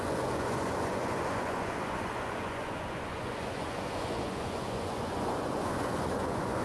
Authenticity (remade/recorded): remade